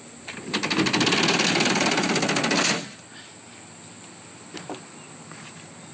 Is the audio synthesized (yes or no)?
no